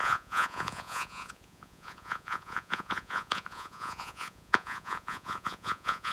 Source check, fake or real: fake